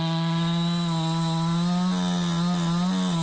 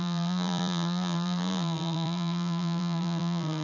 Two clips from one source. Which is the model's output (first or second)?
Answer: second